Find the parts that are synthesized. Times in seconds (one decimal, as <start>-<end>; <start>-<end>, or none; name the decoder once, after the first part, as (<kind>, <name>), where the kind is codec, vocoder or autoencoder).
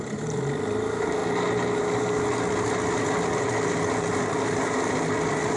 none